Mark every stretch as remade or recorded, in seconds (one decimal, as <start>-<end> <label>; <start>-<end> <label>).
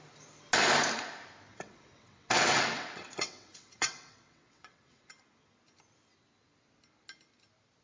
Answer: 0.0-1.5 recorded; 1.5-5.1 remade; 5.1-7.8 recorded